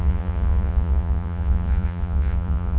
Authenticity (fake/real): fake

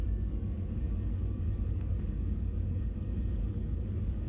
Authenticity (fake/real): fake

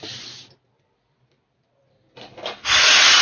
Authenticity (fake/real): real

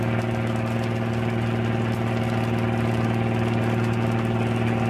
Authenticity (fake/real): real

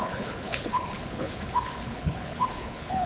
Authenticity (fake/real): fake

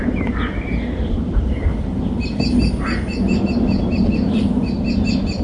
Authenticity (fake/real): fake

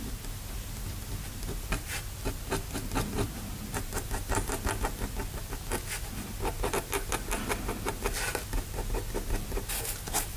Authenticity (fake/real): real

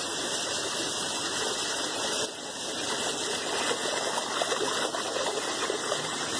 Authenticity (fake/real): real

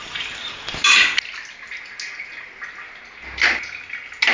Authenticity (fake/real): real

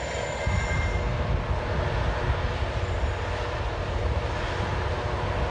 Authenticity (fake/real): real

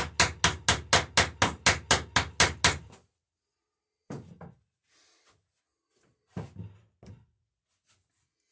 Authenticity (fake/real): real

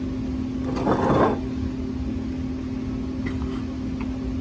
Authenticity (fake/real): real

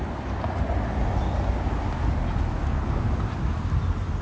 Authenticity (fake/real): real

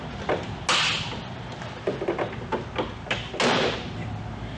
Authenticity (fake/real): real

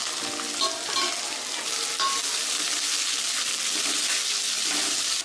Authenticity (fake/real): real